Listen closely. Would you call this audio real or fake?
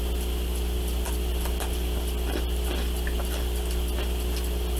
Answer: real